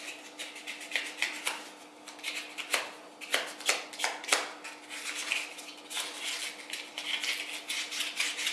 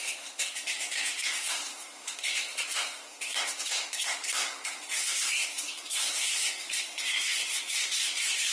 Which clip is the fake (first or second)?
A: second